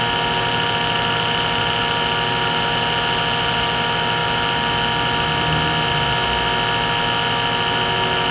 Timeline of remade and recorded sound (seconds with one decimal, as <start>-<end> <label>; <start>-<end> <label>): 0.0-8.3 recorded